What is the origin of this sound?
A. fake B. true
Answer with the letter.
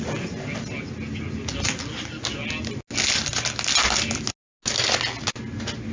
B